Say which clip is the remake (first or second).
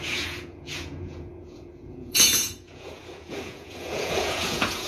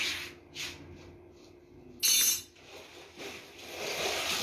first